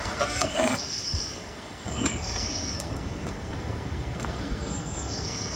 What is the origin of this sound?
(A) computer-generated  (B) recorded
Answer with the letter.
A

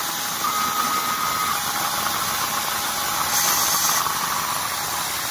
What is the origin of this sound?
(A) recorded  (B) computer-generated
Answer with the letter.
A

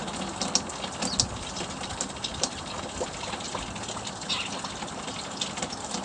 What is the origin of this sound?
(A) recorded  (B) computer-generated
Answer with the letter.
A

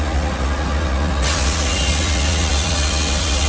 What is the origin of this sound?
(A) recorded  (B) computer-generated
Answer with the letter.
B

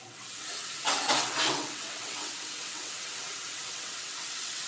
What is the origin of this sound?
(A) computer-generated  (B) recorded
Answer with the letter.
A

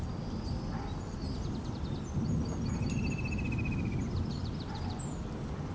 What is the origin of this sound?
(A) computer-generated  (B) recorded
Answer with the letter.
B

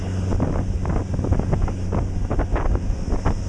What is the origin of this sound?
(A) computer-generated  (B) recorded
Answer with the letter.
B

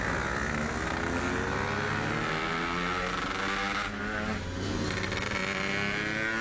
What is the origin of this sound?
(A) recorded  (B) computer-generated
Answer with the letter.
A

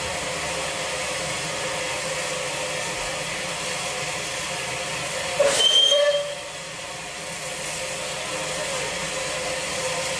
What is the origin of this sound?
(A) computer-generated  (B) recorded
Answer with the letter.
B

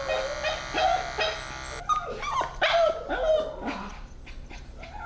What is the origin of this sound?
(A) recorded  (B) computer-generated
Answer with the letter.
A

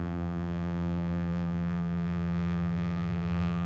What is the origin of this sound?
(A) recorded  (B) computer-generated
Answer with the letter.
B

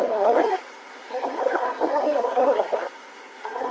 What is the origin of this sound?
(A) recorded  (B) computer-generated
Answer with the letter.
B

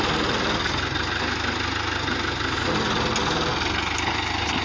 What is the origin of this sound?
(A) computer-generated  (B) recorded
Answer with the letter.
B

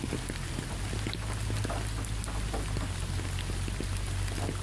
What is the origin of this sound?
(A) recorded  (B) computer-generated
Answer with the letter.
A